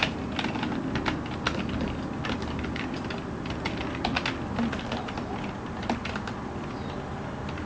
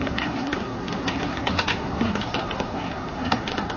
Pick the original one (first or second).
first